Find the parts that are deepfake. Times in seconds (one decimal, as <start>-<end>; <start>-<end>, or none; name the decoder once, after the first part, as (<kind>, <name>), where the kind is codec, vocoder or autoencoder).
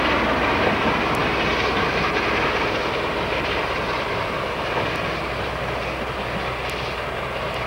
none